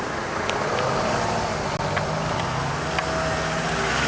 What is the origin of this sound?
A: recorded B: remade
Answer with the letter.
A